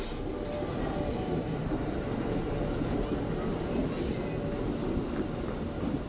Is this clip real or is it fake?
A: real